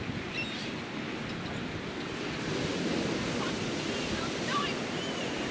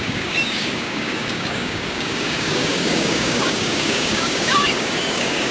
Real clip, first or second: first